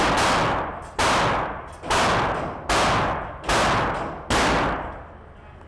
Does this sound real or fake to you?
real